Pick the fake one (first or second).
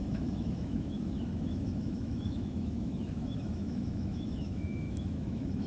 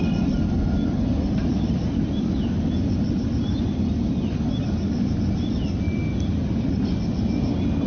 first